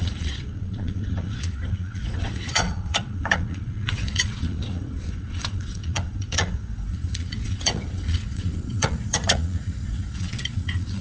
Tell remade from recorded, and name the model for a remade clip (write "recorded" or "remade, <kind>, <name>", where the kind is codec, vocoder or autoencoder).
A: remade, vocoder, Vocos